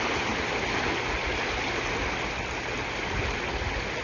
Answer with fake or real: real